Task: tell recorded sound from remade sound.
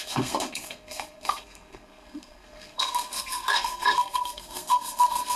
remade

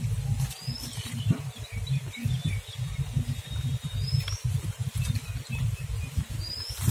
recorded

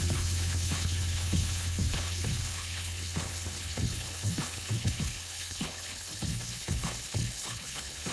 remade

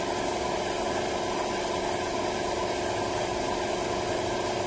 recorded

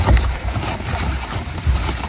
recorded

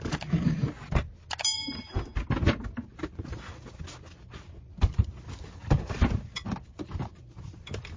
recorded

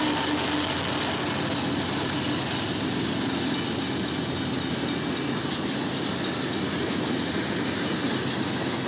recorded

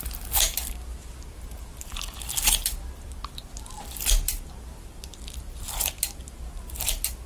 recorded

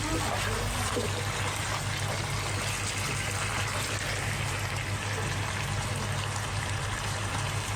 recorded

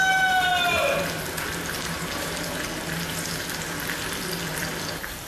recorded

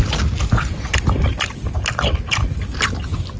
recorded